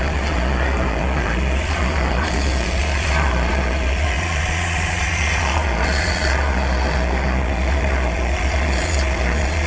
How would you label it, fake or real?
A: fake